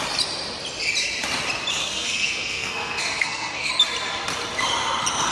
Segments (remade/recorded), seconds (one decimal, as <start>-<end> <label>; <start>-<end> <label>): 0.0-1.8 recorded; 1.8-3.7 remade; 3.7-5.3 recorded